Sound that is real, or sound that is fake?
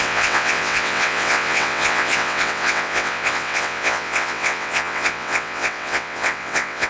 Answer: fake